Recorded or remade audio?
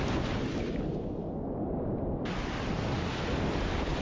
recorded